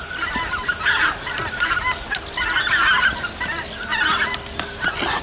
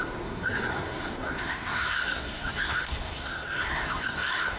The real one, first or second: first